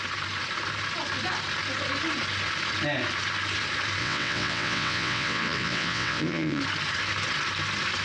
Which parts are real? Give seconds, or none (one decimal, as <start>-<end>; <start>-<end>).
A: 0.0-4.0; 6.6-8.0